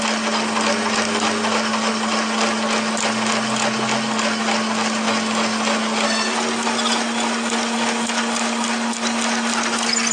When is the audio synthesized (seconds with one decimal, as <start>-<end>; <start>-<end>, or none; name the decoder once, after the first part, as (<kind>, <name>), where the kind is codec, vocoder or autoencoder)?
none